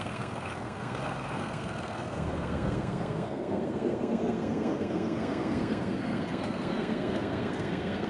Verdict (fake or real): fake